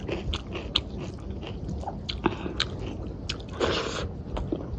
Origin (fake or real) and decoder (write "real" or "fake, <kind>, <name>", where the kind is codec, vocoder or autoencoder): real